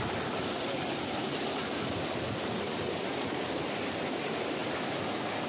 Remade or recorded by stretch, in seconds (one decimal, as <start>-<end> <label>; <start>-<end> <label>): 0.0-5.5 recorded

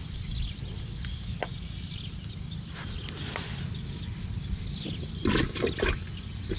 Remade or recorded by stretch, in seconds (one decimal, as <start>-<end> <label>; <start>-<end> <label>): 0.0-6.6 recorded

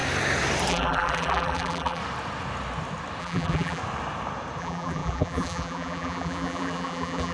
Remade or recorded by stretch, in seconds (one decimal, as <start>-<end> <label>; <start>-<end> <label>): 0.0-0.7 recorded; 0.7-2.0 remade; 2.0-3.2 recorded; 3.2-3.8 remade; 3.8-4.6 recorded; 4.6-7.3 remade